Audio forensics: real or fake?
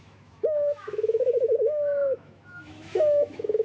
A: fake